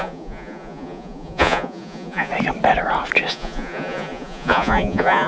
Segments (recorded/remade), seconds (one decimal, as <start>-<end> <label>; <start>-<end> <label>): 0.0-2.3 remade; 2.3-3.3 recorded; 3.3-5.3 remade